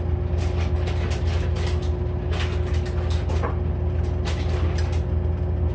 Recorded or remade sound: recorded